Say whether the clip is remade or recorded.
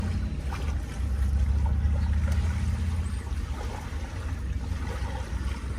recorded